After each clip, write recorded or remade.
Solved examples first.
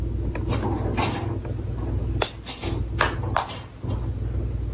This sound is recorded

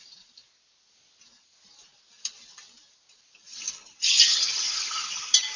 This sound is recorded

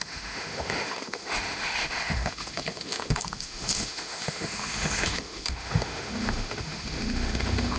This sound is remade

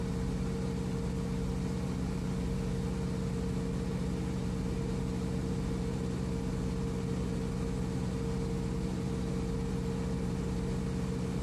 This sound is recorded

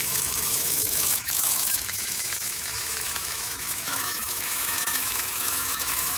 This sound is remade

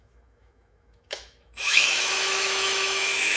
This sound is remade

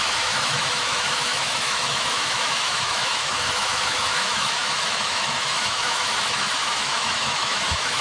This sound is remade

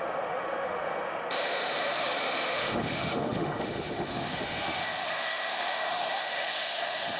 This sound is remade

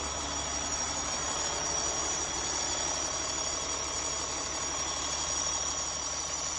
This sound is recorded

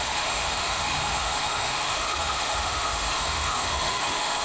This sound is remade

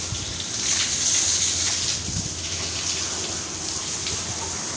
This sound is recorded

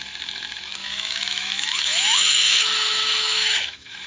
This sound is remade